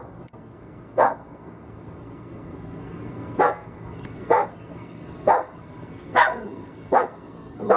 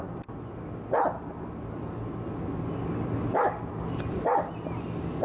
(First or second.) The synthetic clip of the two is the first